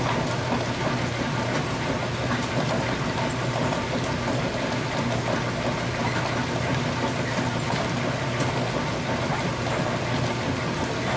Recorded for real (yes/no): yes